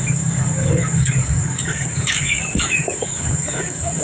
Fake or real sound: fake